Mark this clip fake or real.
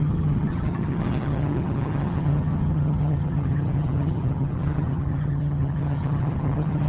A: fake